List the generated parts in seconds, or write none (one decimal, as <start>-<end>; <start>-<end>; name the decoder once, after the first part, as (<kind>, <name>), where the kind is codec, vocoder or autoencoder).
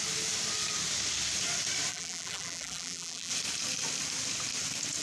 1.9-3.3 (vocoder, BigVGAN v2)